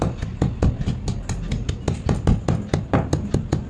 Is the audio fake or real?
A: real